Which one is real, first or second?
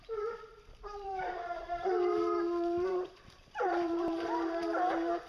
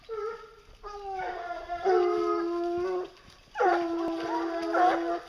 second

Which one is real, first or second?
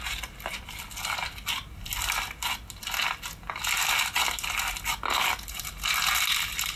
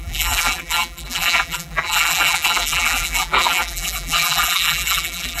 first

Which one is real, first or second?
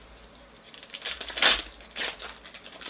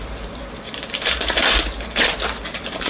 first